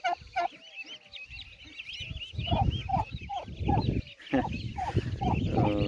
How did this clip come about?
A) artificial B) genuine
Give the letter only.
B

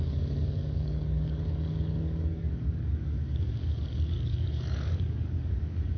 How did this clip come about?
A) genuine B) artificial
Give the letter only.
B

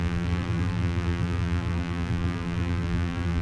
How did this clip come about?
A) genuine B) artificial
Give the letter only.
B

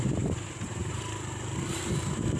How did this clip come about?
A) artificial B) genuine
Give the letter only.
A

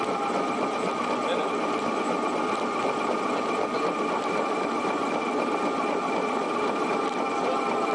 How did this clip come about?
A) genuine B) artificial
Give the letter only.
A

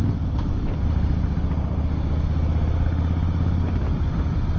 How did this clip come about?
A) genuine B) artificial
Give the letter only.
A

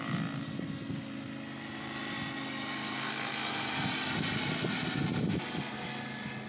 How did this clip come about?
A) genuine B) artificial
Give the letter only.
A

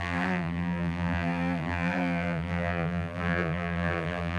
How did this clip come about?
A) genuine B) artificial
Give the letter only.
B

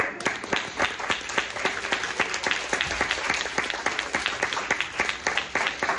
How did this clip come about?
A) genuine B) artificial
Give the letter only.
A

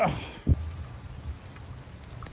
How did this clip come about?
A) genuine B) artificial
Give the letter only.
A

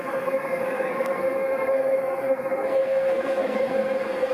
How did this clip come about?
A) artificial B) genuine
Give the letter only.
A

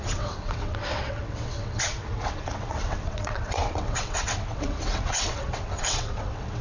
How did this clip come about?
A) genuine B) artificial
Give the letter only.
B